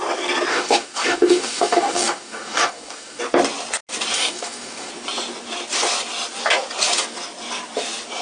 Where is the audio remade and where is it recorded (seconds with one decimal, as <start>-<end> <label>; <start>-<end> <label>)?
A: 0.0-0.5 recorded; 0.5-3.2 remade; 3.2-4.1 recorded; 4.1-4.9 remade; 4.9-8.2 recorded